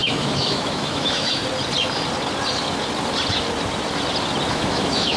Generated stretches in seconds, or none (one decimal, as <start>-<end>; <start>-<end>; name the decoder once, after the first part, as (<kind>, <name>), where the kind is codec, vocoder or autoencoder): 0.0-1.4 (autoencoder, DAC-VAE); 4.5-5.2

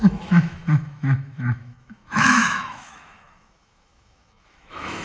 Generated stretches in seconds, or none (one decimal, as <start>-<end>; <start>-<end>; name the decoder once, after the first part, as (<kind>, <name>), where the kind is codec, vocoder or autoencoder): 0.0-5.0 (autoencoder, DAC-VAE)

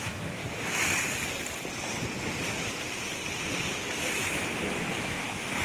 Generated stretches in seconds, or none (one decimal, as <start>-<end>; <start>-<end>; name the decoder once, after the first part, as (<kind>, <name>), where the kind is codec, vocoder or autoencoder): 0.0-0.4 (autoencoder, DAC-VAE); 3.8-5.6

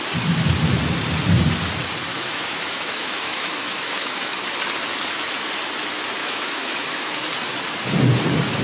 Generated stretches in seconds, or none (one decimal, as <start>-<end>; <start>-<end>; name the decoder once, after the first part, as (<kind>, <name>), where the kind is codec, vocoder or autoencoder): 2.1-4.3 (autoencoder, DAC-VAE); 6.2-7.3

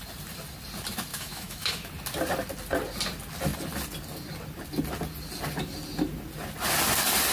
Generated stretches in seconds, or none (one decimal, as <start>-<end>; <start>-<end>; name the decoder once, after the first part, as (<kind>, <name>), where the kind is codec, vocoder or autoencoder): 1.1-1.9 (autoencoder, DAC-VAE)

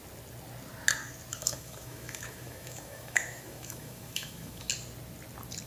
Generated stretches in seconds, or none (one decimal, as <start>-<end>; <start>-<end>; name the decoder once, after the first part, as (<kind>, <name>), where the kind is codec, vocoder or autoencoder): 1.3-4.7 (autoencoder, DAC-VAE)

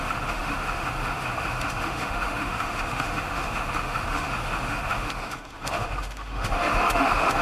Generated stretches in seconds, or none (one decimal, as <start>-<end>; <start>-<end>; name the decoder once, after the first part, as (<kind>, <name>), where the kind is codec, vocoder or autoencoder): 0.0-7.4 (autoencoder, DAC-VAE)